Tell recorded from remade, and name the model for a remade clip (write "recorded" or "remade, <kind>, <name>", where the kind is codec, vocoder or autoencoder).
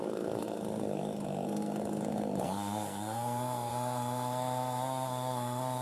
remade, codec, SNAC